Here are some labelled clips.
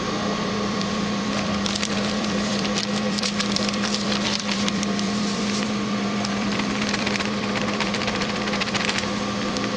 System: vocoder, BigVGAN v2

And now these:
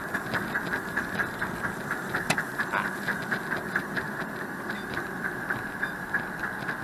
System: none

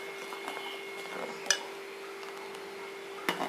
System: none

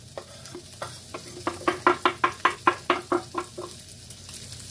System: none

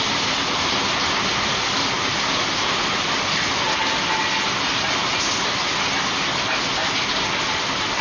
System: none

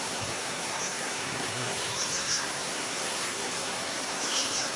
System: codec, SNAC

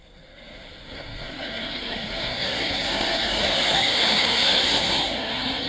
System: codec, SNAC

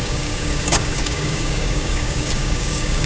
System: codec, DAC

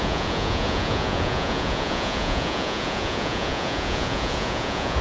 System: vocoder, Vocos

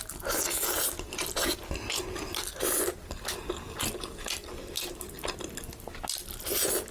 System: none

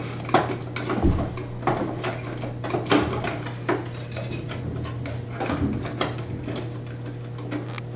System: none